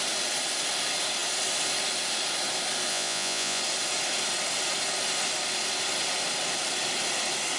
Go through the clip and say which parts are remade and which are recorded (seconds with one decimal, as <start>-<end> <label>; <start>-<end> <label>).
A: 0.0-2.9 recorded; 2.9-3.6 remade; 3.6-7.6 recorded